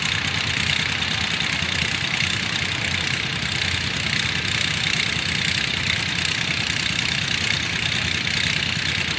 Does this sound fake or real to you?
real